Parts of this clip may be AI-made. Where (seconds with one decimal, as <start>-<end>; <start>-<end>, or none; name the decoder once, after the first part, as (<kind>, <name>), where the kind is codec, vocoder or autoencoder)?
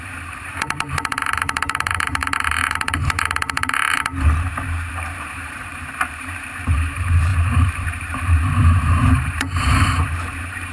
0.0-4.1 (vocoder, BigVGAN v2); 4.9-10.7